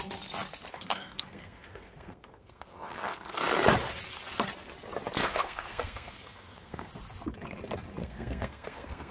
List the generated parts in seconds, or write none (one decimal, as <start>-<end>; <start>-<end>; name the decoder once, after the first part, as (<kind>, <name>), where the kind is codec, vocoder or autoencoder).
0.7-3.4 (codec, SNAC); 5.2-6.9; 8.0-9.1